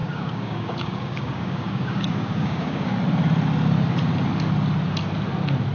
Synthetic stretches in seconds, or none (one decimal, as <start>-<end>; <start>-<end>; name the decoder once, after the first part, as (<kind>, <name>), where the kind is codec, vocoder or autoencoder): 0.0-2.9 (codec, DAC)